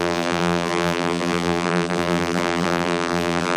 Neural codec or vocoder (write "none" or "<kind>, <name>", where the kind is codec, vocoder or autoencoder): vocoder, BigVGAN v2